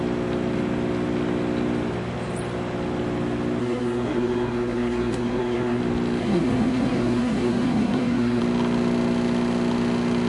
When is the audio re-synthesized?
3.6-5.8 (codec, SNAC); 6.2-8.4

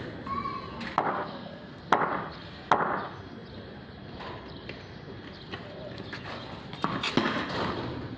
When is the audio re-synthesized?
1.1-1.9 (codec, SNAC)

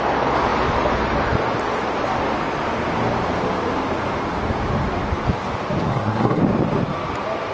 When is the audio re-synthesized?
5.9-6.4 (codec, SNAC)

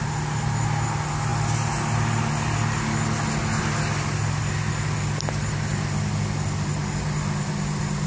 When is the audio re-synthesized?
none